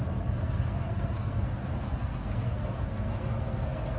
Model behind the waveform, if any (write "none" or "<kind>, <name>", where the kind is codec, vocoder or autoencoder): codec, SNAC